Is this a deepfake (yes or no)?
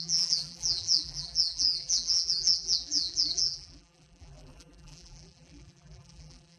yes